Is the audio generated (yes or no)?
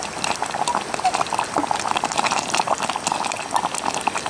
no